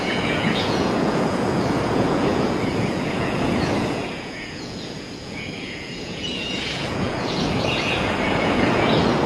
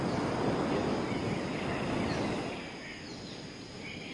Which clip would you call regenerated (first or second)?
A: first